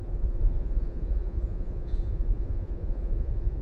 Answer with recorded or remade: remade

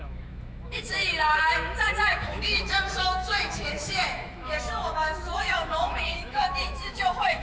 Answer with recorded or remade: remade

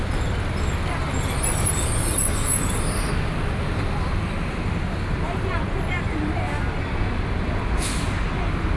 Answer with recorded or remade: recorded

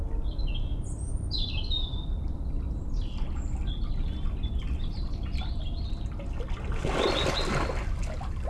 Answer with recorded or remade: recorded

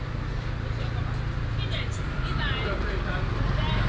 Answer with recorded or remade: recorded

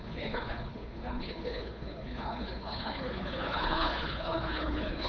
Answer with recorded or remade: remade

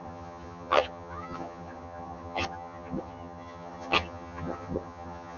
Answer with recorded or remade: remade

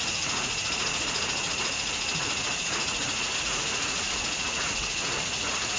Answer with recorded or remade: remade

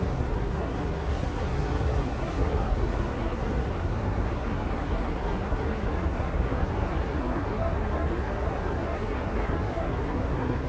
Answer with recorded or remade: remade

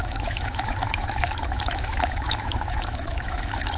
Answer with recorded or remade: remade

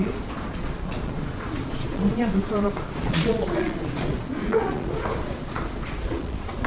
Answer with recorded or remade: remade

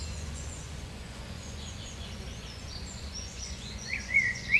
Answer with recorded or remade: remade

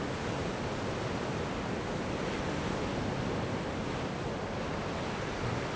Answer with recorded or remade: recorded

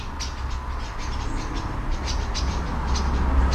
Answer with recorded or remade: recorded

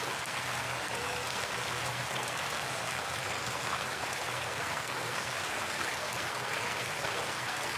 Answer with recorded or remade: remade